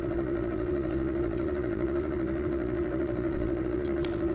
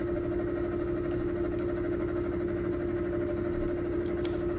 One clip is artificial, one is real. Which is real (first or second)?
second